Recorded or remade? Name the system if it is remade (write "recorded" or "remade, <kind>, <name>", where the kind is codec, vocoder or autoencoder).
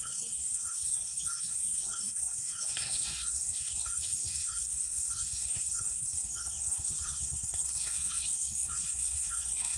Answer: remade, codec, SNAC